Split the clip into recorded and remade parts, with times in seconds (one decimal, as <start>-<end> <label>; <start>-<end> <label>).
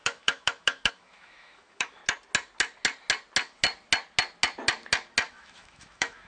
0.0-2.0 remade; 2.0-5.3 recorded; 5.3-6.3 remade